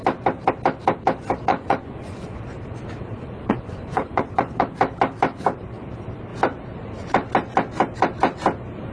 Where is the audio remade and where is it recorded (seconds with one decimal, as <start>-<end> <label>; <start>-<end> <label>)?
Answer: 0.0-1.5 recorded; 1.5-2.4 remade; 2.4-3.1 recorded; 3.1-4.8 remade; 4.8-8.9 recorded

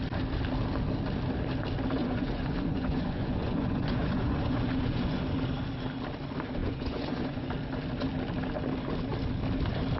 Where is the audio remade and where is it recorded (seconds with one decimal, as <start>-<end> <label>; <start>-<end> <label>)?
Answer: 0.0-2.0 recorded; 2.0-5.2 remade; 5.2-6.6 recorded; 6.6-7.5 remade; 7.5-10.0 recorded

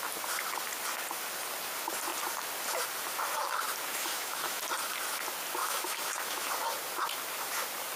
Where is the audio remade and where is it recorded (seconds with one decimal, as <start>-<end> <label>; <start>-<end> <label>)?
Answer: 0.0-3.9 recorded; 3.9-4.6 remade; 4.6-5.6 recorded; 5.6-6.5 remade; 6.5-8.0 recorded

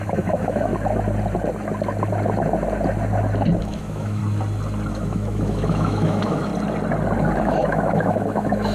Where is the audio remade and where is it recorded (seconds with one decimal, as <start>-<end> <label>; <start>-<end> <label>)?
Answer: 0.0-0.7 remade; 0.7-3.6 recorded; 3.6-4.2 remade; 4.2-4.9 recorded; 4.9-6.5 remade; 6.5-7.4 recorded; 7.4-8.7 remade

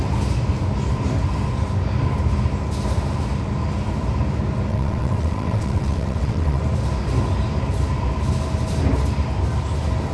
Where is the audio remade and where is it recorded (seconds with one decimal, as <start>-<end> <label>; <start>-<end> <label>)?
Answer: 0.0-4.7 recorded; 4.7-6.6 remade; 6.6-10.1 recorded

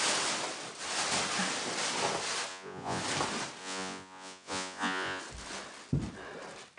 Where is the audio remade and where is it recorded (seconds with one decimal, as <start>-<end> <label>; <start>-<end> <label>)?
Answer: 0.0-2.5 recorded; 2.5-3.0 remade; 3.0-3.6 recorded; 3.6-5.2 remade; 5.2-6.8 recorded

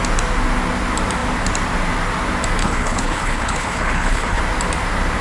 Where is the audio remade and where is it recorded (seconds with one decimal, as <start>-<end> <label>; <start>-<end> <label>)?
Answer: 0.0-2.6 recorded; 2.6-4.4 remade; 4.4-5.2 recorded